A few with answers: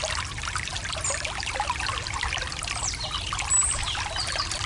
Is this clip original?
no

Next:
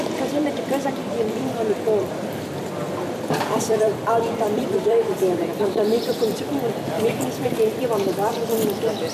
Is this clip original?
no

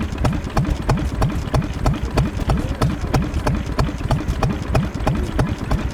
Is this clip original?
yes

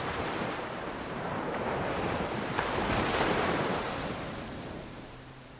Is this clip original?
no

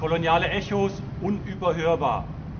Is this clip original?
yes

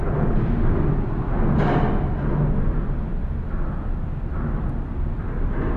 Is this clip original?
yes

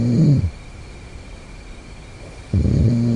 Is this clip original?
yes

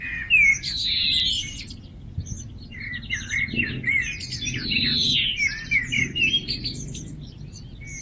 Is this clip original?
yes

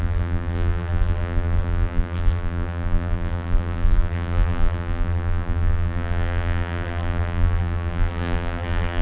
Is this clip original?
no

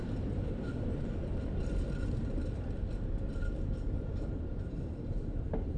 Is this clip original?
no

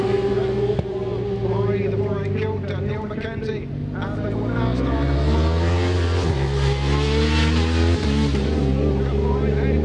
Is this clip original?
yes